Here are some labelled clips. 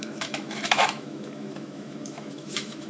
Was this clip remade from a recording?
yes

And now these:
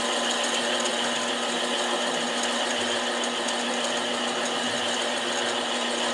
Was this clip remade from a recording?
no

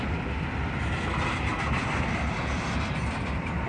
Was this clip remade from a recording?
no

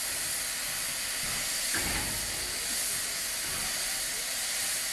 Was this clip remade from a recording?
no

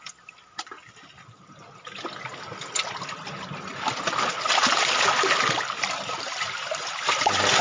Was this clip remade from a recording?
no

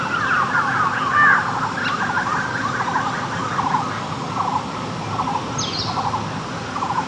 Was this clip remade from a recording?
no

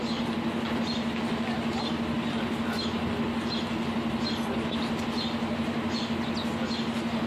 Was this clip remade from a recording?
no